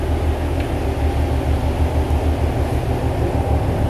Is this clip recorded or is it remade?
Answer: recorded